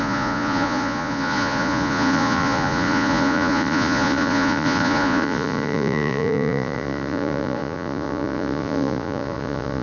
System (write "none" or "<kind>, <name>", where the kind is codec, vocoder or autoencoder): vocoder, Vocos